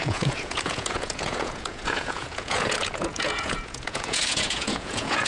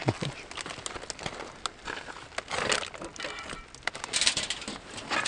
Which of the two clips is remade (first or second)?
first